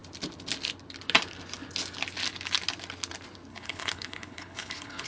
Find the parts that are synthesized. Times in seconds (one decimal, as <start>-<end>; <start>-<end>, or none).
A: 3.5-5.1